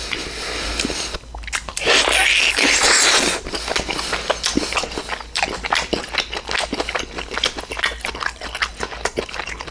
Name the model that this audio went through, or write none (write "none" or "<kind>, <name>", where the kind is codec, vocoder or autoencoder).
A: none